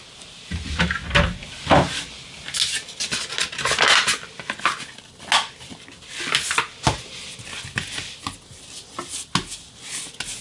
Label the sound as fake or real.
real